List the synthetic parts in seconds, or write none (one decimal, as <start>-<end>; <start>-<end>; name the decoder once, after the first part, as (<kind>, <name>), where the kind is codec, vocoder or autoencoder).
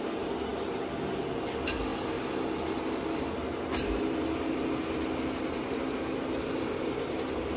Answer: none